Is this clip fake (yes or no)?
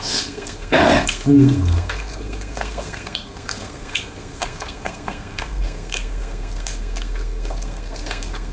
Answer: yes